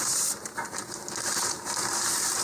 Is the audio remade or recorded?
remade